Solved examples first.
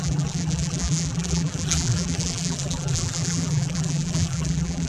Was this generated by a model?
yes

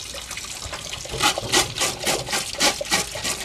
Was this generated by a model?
no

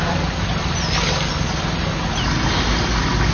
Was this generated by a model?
no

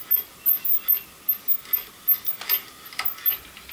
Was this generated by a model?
no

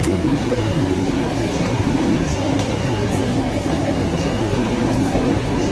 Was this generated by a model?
yes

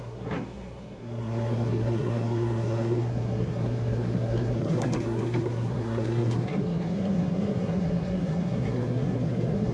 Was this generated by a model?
yes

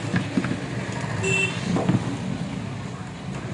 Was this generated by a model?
no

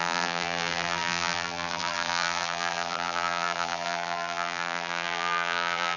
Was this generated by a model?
yes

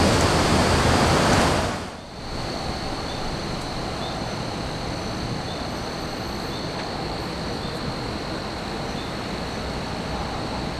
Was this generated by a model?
no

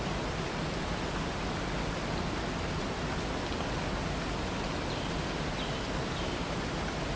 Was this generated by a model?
no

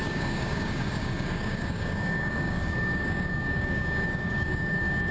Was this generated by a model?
yes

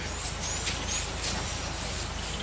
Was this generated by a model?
no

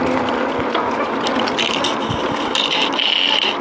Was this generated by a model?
no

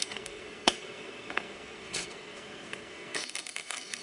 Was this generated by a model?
yes